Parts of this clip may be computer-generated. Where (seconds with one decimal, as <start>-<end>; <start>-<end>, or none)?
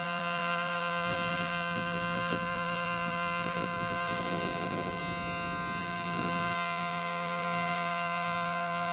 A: 0.0-5.0; 5.8-8.9